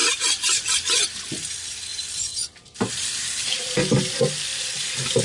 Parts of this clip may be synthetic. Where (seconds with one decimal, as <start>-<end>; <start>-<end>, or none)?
1.9-3.7